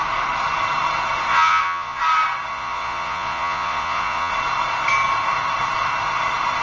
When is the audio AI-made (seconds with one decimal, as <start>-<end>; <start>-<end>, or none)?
1.3-2.0; 2.5-4.3